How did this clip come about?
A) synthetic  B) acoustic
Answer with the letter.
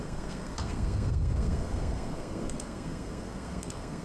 A